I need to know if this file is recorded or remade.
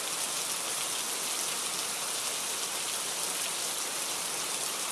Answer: recorded